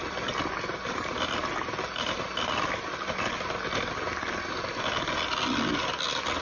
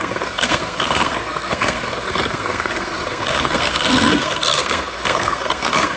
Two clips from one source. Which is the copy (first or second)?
second